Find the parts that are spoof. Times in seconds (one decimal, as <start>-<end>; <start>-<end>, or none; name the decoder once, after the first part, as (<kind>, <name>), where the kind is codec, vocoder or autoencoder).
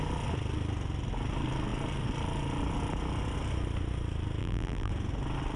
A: 4.4-4.9 (vocoder, BigVGAN v2)